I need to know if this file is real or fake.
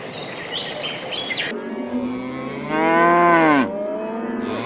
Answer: real